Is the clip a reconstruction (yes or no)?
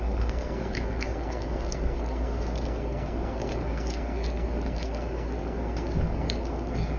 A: yes